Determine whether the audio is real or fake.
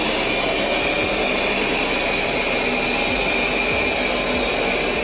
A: real